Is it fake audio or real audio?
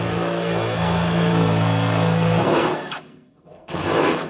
fake